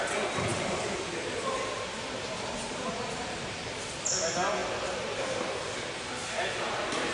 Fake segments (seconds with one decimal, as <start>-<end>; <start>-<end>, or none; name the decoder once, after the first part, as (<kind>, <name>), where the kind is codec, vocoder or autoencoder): 0.5-3.7 (vocoder, BigVGAN v2); 4.6-5.2; 6.2-7.1